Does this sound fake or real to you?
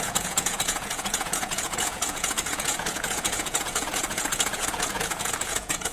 fake